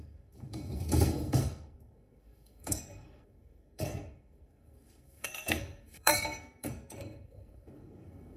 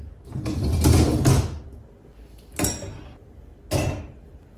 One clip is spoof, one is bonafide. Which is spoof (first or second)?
first